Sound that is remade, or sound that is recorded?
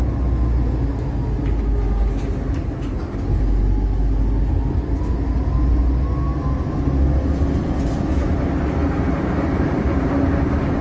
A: recorded